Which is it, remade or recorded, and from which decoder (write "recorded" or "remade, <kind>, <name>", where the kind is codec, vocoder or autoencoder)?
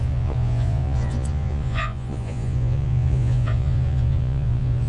remade, vocoder, Vocos